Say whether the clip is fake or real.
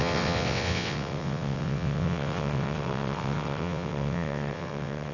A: fake